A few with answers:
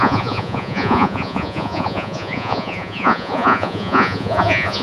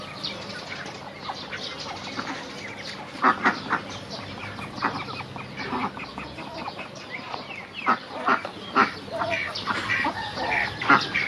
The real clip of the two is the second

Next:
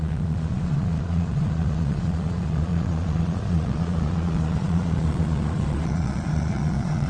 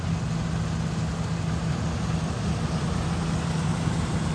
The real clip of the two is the second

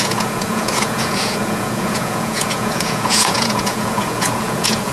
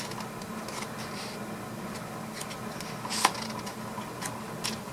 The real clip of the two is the second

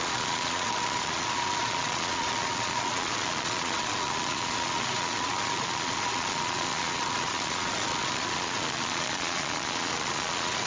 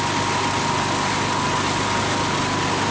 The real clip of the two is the second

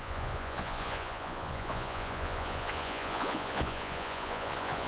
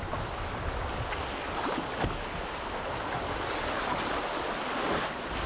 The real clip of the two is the second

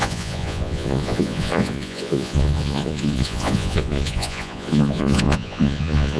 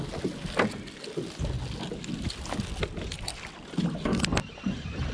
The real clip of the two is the second